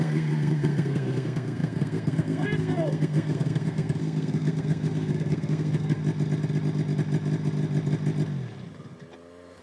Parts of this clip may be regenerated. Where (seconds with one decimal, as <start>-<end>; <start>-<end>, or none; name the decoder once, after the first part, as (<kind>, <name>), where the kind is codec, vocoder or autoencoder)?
0.0-6.0 (codec, SNAC)